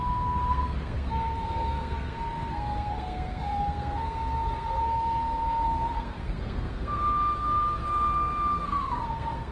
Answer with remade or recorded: remade